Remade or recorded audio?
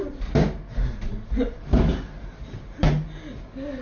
recorded